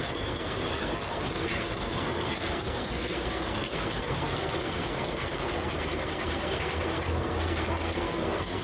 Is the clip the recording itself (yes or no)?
no